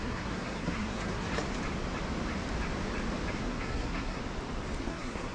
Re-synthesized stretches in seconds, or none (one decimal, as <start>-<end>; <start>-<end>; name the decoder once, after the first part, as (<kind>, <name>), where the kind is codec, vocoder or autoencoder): 0.0-1.3 (codec, SNAC); 3.3-4.2; 4.8-5.3